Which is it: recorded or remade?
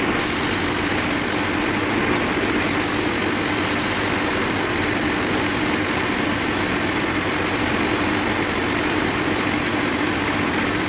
recorded